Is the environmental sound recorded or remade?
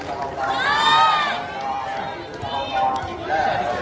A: recorded